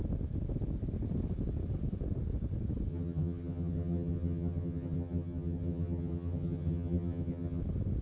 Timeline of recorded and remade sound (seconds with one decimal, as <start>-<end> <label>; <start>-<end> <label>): 0.0-2.9 recorded; 2.9-7.6 remade; 7.6-8.0 recorded